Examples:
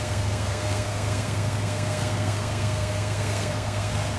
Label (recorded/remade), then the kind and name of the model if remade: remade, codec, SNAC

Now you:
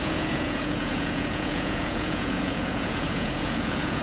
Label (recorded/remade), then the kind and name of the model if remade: remade, vocoder, Vocos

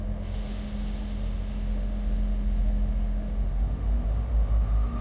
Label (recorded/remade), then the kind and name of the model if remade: remade, autoencoder, DAC-VAE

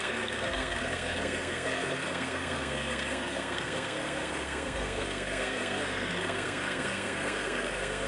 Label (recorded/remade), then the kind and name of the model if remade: remade, codec, SNAC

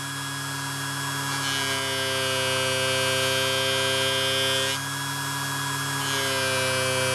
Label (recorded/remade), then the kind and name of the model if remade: recorded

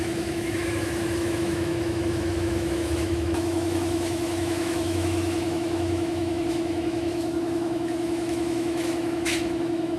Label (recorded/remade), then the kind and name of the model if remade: remade, autoencoder, DAC-VAE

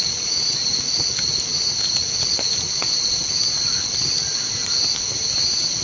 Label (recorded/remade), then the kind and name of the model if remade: recorded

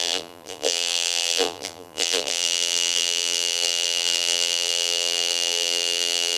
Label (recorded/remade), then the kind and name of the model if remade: remade, vocoder, BigVGAN v2